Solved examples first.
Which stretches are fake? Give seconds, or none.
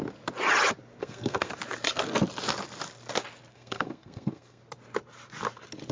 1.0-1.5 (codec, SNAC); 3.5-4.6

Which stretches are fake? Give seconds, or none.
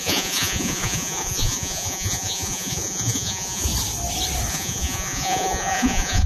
0.0-3.7 (vocoder, Vocos); 4.5-6.3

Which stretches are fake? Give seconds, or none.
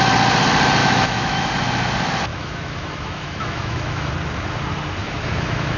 0.8-1.5 (autoencoder, DAC-VAE); 2.3-4.1; 5.0-5.8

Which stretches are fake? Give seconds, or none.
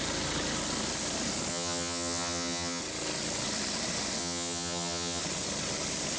1.5-2.8 (vocoder, HiFi-GAN); 4.2-5.2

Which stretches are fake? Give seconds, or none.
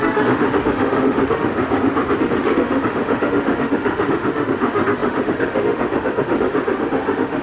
0.0-1.5 (autoencoder, DAC-VAE); 2.2-7.4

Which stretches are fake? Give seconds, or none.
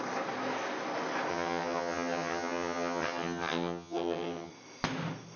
1.3-4.5 (vocoder, HiFi-GAN)